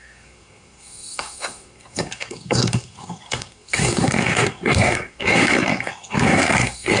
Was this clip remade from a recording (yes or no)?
yes